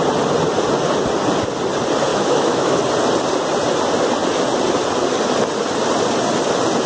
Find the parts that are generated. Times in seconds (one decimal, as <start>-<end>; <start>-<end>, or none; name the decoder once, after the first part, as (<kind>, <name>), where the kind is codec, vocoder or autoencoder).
2.1-2.8 (autoencoder, DAC-VAE)